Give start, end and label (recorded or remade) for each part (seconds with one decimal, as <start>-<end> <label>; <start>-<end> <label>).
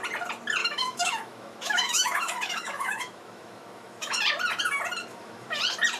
0.0-0.6 recorded; 0.6-4.2 remade; 4.2-5.1 recorded; 5.1-5.6 remade; 5.6-6.0 recorded